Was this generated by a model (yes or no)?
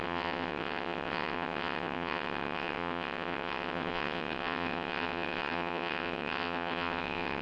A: yes